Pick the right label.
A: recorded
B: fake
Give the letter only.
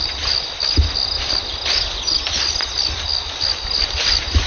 A